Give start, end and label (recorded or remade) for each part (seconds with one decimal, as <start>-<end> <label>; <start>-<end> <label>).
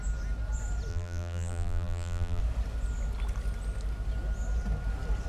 0.0-0.9 recorded; 0.9-2.4 remade; 2.4-5.3 recorded